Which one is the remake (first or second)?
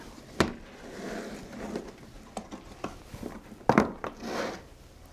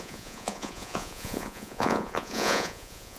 second